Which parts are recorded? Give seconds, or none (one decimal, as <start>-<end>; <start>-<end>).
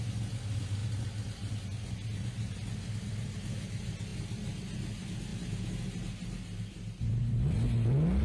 0.0-8.2